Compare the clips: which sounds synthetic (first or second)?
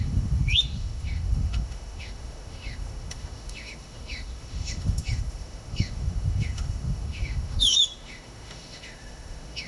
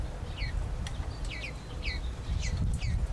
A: first